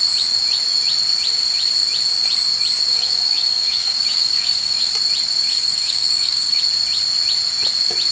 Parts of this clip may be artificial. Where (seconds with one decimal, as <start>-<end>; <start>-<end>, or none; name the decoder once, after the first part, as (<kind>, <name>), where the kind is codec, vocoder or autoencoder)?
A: 2.9-4.9 (codec, DAC); 5.5-6.6